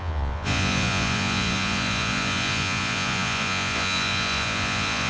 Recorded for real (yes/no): no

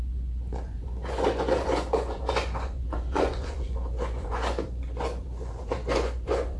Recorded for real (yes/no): no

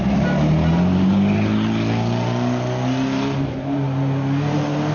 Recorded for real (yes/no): yes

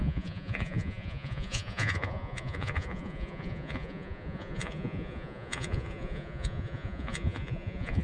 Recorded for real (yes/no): no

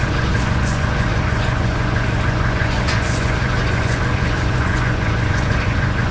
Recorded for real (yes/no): no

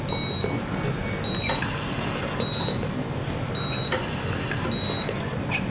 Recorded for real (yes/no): yes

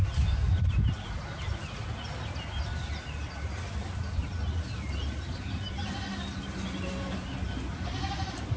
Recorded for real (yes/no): yes